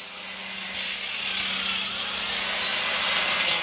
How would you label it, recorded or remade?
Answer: recorded